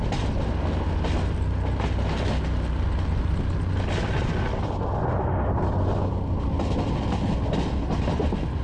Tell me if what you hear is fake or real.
real